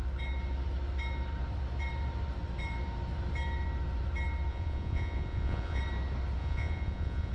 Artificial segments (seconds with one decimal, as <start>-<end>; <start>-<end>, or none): 4.5-5.8; 6.4-7.3